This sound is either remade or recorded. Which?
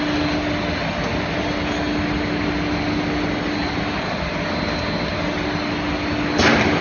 recorded